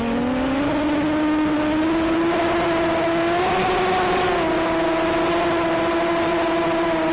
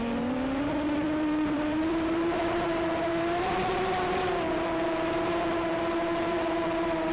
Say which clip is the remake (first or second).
second